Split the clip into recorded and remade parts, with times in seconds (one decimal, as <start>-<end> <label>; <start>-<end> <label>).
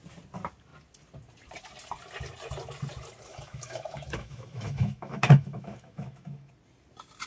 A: 0.0-3.3 recorded; 3.3-6.5 remade; 6.5-7.3 recorded